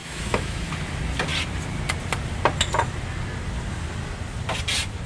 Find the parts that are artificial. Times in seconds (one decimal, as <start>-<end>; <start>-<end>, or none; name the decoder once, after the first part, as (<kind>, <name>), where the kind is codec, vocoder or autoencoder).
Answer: 0.0-0.7 (autoencoder, DAC-VAE)